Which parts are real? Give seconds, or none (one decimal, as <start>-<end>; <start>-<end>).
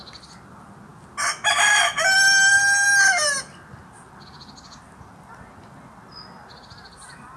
0.0-7.4